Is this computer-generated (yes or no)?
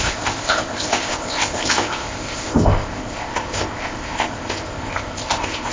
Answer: yes